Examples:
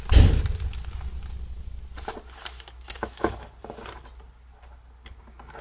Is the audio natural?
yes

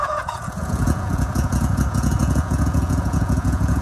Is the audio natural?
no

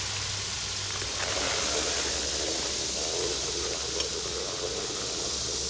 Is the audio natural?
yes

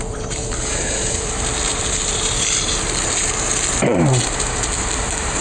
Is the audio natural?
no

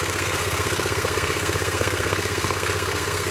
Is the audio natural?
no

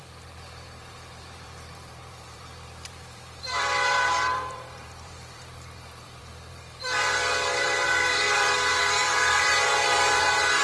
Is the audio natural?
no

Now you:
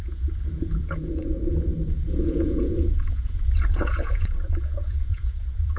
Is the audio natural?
no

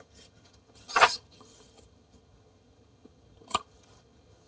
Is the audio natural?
no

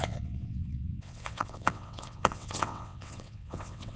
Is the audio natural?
no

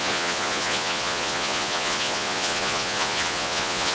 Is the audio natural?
no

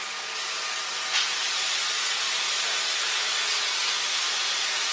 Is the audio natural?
yes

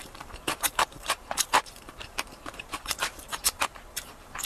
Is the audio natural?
no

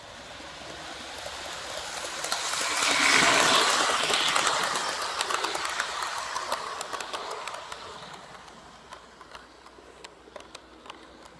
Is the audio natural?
yes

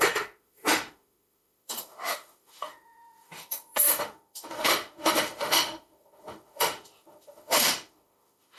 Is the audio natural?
no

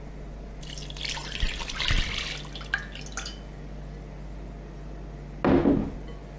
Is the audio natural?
yes